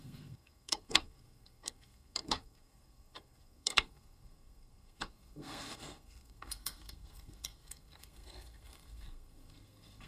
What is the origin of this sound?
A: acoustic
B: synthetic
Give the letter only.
B